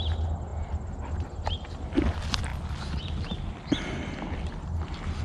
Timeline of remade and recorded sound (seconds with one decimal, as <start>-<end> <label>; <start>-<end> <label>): 0.0-5.2 recorded